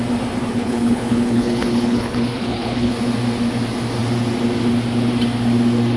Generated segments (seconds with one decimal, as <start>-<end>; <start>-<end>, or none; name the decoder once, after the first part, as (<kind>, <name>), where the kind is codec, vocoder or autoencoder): 0.4-2.9 (codec, HILCodec)